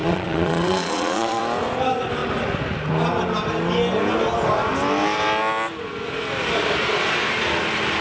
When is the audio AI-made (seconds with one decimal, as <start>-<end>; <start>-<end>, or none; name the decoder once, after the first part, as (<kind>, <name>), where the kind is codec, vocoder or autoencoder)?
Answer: 0.0-1.4 (vocoder, Vocos)